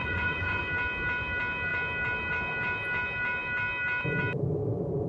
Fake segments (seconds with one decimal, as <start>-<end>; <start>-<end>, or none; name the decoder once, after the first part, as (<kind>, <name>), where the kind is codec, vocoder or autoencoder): 0.0-0.6 (vocoder, Vocos)

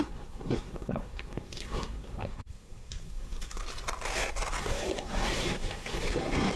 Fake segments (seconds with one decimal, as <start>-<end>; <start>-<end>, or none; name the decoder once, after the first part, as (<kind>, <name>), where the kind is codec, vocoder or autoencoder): 0.0-3.6 (codec, SNAC); 4.6-6.6

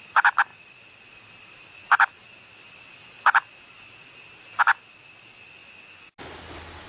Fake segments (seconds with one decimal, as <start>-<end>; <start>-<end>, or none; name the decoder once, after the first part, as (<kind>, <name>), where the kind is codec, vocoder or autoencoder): none

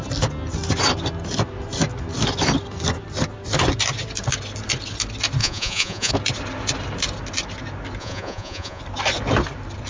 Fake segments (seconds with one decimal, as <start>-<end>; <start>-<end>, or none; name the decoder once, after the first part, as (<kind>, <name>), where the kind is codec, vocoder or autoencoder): 5.4-6.1 (vocoder, Vocos); 8.0-8.8

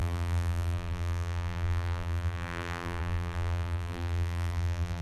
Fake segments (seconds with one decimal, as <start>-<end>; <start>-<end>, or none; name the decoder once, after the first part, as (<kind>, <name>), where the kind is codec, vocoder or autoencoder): 0.0-5.0 (vocoder, BigVGAN v2)

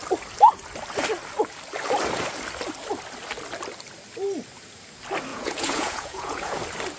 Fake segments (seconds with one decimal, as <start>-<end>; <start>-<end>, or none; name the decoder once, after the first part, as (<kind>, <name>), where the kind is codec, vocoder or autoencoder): 5.3-6.6 (vocoder, Vocos)

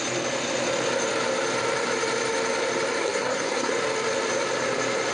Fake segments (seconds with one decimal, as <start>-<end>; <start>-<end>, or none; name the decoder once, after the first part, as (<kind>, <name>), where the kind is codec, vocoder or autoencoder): 3.0-3.7 (codec, SNAC)

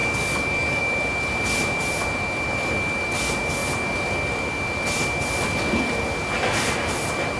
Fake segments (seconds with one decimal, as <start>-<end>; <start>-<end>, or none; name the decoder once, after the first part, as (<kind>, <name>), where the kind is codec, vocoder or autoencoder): 0.0-0.8 (codec, DAC)